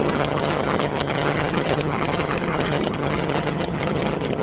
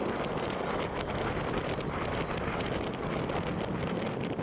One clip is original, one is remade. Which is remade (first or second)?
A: first